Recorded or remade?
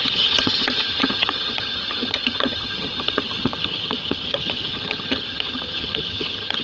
remade